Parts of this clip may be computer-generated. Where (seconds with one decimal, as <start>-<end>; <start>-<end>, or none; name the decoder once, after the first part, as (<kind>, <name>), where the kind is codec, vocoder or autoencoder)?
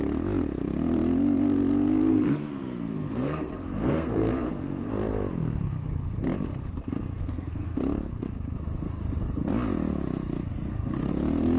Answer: 2.1-4.9 (codec, SNAC); 7.2-7.8; 10.5-11.1